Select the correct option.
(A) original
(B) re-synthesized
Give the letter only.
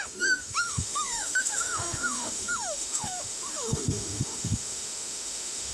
B